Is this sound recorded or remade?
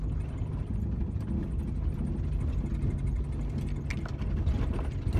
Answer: recorded